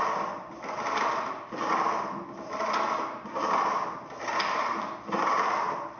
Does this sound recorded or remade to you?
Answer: recorded